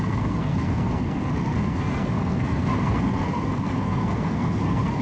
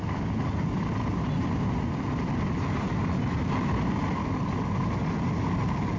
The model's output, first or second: first